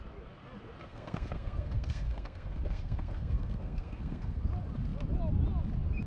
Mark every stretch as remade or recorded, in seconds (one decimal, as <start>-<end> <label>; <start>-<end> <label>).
0.0-0.8 recorded; 0.8-4.4 remade; 4.4-6.1 recorded